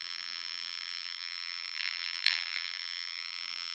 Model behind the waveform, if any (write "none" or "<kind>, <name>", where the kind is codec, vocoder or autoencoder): vocoder, BigVGAN v2